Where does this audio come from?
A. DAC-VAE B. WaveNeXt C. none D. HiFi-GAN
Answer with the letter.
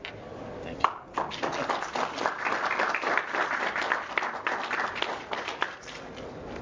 C